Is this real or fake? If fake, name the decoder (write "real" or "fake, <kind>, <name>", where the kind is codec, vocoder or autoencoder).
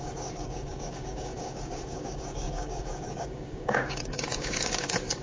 fake, codec, DAC